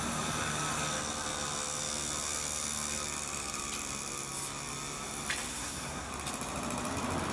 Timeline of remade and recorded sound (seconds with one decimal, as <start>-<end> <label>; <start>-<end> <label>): 0.0-5.5 recorded; 5.5-6.1 remade; 6.1-7.3 recorded